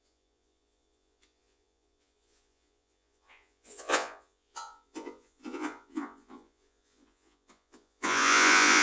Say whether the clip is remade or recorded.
remade